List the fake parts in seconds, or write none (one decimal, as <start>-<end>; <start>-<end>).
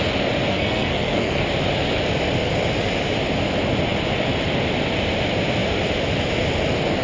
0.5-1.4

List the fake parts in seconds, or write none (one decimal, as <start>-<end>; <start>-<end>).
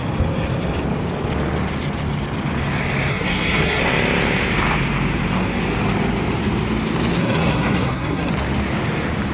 3.1-3.8; 7.2-8.3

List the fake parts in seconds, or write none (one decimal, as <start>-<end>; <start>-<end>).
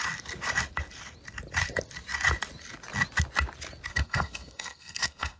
3.9-5.4